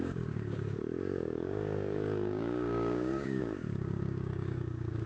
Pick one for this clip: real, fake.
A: fake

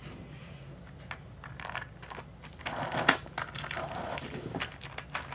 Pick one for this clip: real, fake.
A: real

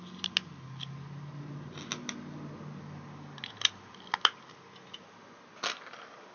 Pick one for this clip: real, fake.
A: real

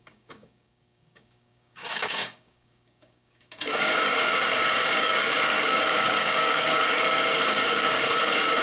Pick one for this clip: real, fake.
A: fake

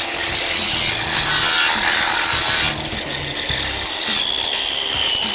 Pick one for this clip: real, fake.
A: real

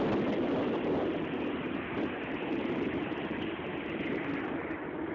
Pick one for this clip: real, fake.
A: real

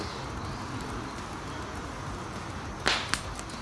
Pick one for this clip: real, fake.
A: real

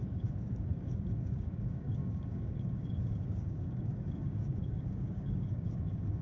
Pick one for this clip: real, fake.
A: fake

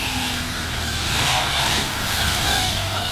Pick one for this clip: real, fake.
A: fake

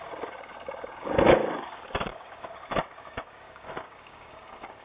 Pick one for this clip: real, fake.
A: fake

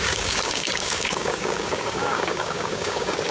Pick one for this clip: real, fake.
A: fake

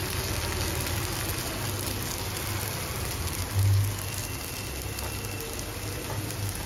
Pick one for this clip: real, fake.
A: real